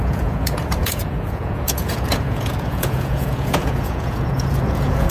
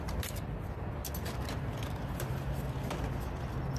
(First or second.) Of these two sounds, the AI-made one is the first